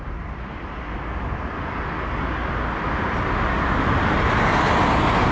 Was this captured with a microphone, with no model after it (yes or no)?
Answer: yes